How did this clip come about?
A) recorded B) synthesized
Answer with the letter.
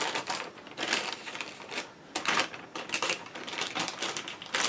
A